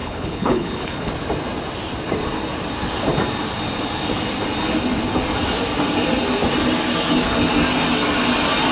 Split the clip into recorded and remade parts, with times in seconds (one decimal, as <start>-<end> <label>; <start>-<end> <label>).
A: 0.0-1.1 remade; 1.1-8.7 recorded